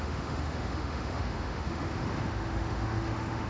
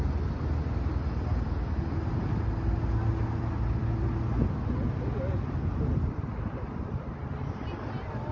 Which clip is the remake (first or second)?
first